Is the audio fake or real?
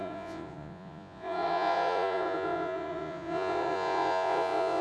fake